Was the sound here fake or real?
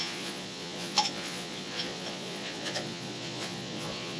fake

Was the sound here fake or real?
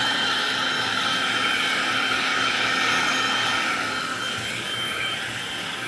fake